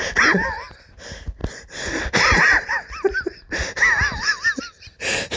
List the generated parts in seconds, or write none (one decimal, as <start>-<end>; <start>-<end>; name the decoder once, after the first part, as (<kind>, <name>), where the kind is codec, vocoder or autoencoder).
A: 1.4-4.6 (vocoder, BigVGAN v2)